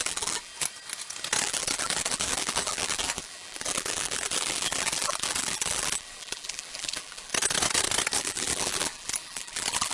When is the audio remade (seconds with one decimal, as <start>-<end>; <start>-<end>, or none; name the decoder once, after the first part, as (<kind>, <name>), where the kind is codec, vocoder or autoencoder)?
0.0-0.5 (vocoder, BigVGAN v2); 1.4-7.3; 8.2-9.9